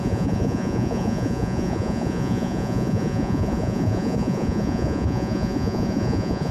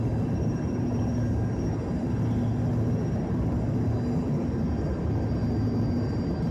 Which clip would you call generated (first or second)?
first